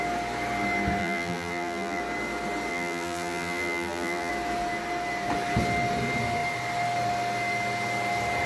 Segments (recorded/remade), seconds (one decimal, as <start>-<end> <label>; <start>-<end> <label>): 0.0-1.0 recorded; 1.0-2.0 remade; 2.0-2.7 recorded; 2.7-4.3 remade; 4.3-8.5 recorded